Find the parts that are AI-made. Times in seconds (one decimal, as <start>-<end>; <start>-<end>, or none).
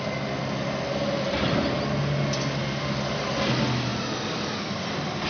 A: none